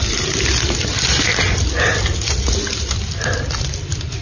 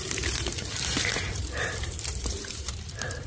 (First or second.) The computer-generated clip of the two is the second